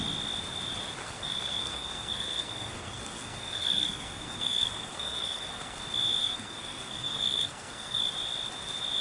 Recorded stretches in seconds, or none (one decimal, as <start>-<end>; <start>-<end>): 0.0-1.0; 5.8-6.2; 8.0-9.0

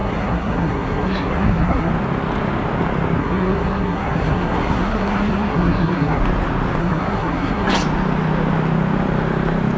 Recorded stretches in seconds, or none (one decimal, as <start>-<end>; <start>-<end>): 1.9-3.2; 6.2-6.8; 7.7-9.8